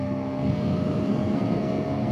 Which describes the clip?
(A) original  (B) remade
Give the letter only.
B